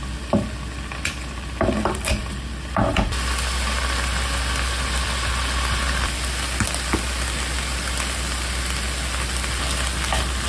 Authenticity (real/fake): real